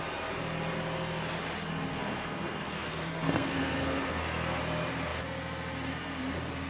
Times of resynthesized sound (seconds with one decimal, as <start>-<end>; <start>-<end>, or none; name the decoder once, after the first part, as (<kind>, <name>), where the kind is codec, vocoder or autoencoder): 1.9-4.6 (codec, SNAC)

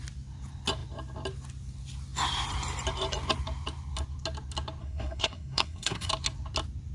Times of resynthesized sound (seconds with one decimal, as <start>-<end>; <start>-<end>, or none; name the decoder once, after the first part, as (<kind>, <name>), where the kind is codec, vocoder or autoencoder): 4.8-6.1 (codec, SNAC)

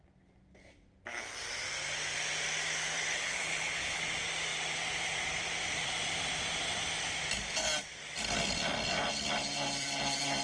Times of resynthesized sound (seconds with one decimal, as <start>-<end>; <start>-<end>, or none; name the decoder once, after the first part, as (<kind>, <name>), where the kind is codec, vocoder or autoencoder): 3.1-4.0 (codec, HILCodec)

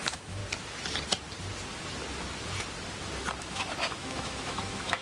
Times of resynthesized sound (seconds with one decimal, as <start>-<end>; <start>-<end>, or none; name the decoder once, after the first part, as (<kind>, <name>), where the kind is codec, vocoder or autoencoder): 0.0-0.4 (autoencoder, DAC-VAE); 3.4-5.0

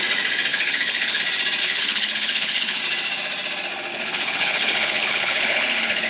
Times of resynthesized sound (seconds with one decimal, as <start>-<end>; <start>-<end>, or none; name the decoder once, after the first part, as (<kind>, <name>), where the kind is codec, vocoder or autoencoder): 0.5-1.2 (codec, HILCodec); 1.6-2.8; 3.9-6.1